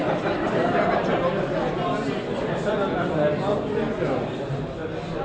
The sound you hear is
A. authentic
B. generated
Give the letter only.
A